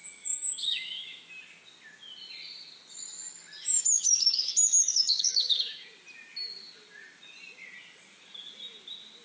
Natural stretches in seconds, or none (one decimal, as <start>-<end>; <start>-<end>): 1.3-3.6; 5.9-9.2